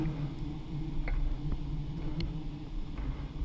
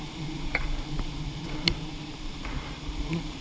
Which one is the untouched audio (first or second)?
first